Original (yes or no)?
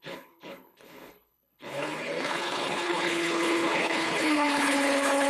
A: no